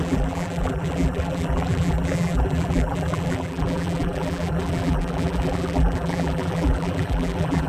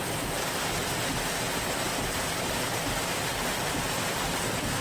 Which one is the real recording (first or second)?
second